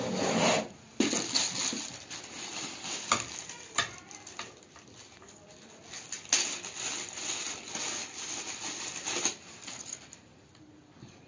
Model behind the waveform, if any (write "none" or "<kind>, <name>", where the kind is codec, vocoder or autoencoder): none